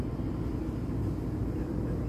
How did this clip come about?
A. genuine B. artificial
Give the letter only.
A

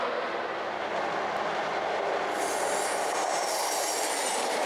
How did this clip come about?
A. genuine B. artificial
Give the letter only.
A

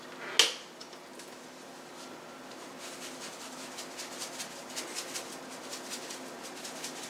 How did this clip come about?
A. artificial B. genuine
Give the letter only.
B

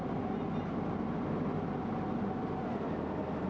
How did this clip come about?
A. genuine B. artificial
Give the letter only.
A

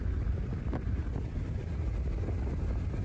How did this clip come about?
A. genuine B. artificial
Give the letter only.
A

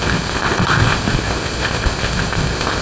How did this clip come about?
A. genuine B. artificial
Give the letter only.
B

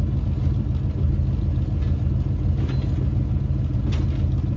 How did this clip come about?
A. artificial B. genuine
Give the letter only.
B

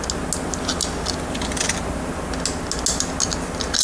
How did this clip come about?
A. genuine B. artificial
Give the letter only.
A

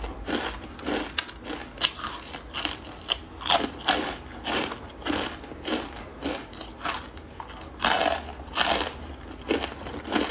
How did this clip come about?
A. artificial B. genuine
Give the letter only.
B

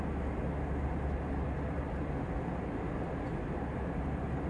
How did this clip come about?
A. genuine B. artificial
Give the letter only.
A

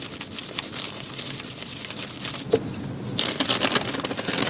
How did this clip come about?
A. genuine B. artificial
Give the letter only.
A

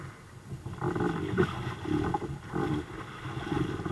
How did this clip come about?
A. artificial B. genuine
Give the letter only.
B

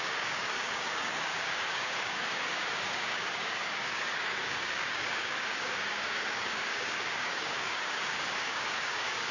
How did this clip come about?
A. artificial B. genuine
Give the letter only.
A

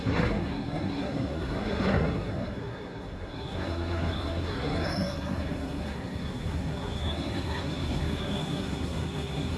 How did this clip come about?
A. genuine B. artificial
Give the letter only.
B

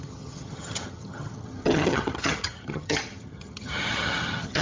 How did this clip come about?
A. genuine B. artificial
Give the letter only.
B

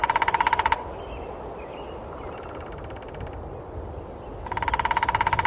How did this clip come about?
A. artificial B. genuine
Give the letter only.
B